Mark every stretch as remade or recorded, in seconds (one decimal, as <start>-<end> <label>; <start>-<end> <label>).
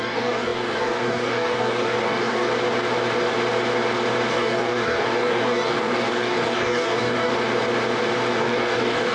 0.0-2.5 remade; 2.5-4.3 recorded; 4.3-7.3 remade; 7.3-8.4 recorded; 8.4-9.1 remade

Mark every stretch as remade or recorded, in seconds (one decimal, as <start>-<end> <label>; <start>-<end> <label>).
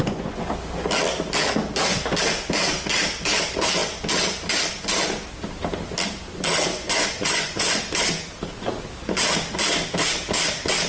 0.0-0.5 remade; 0.5-6.7 recorded; 6.7-7.8 remade; 7.8-10.9 recorded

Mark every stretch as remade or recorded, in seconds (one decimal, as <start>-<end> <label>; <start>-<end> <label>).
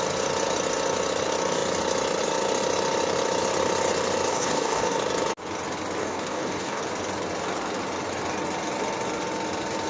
0.0-4.3 recorded; 4.3-5.0 remade; 5.0-6.0 recorded; 6.0-6.8 remade; 6.8-9.9 recorded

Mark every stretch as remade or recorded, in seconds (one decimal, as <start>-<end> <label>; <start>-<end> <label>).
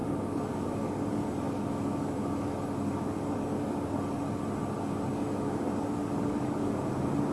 0.0-4.4 remade; 4.4-5.1 recorded; 5.1-6.8 remade; 6.8-7.3 recorded